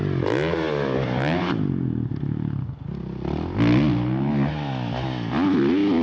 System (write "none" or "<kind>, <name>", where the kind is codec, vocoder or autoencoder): none